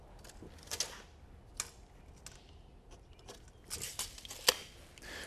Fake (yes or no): no